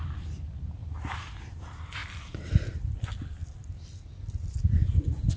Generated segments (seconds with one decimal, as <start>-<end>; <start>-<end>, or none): 0.8-1.6